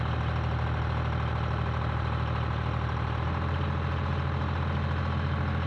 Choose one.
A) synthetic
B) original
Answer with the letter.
B